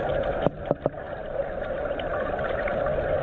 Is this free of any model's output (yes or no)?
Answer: yes